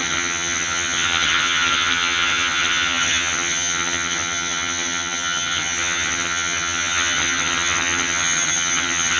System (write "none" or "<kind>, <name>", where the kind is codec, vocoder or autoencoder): vocoder, HiFi-GAN